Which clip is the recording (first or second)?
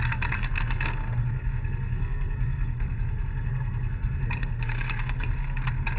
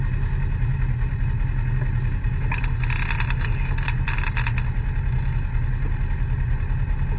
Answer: second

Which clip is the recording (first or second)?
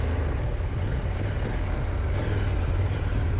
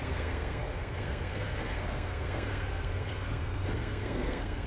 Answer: first